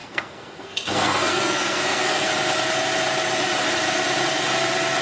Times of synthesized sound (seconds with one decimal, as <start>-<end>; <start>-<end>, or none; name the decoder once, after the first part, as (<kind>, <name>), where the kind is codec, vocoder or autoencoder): 0.0-2.3 (codec, SNAC)